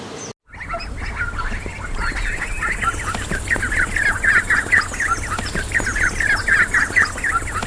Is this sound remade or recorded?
recorded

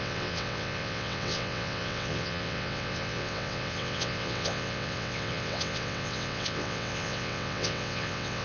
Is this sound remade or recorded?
remade